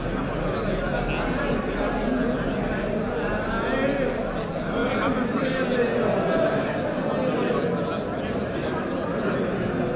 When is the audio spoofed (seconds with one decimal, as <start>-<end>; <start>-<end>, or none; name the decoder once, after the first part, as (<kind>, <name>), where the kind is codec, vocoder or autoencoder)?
none